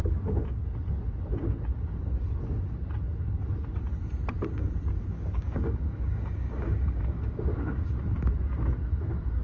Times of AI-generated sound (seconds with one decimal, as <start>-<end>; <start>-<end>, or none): 4.6-8.0

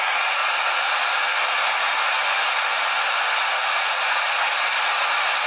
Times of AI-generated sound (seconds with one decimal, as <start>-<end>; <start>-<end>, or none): none